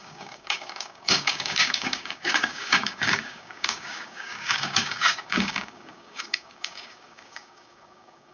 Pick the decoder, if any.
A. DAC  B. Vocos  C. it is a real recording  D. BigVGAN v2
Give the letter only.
A